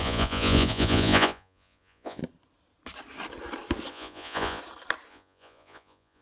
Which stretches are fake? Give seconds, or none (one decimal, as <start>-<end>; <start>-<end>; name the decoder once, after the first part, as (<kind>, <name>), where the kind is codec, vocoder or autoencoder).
0.0-2.2 (vocoder, Vocos); 3.9-4.6; 5.1-6.2

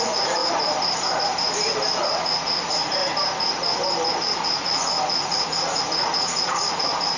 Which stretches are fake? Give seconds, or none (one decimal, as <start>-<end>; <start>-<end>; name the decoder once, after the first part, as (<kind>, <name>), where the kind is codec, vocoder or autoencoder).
0.0-0.4 (vocoder, Vocos); 2.0-3.0; 4.1-7.2